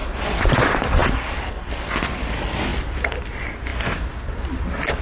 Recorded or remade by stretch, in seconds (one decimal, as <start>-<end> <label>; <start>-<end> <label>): 0.0-0.5 recorded; 0.5-5.0 remade